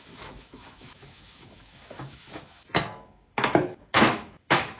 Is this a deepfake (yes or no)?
yes